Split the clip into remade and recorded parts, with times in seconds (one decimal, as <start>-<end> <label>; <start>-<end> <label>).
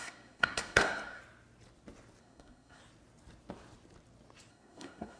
0.0-1.2 remade; 1.2-2.2 recorded; 2.2-2.8 remade; 2.8-4.5 recorded; 4.5-5.2 remade